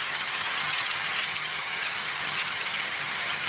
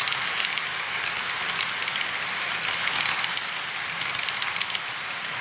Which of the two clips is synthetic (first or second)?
first